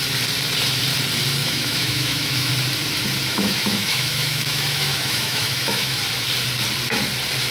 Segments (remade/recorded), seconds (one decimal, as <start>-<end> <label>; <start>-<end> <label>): 0.0-1.4 recorded; 1.4-2.5 remade; 2.5-3.3 recorded; 3.3-6.0 remade; 6.0-7.5 recorded